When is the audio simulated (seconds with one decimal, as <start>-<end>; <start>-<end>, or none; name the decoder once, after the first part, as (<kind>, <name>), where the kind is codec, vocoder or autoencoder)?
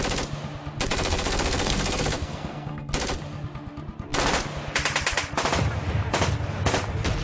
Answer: 0.9-2.9 (codec, SNAC)